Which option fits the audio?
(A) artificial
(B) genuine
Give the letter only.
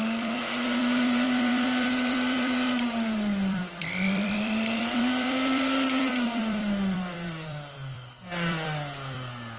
A